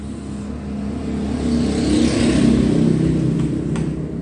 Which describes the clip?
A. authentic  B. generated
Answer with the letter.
A